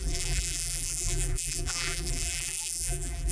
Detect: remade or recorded remade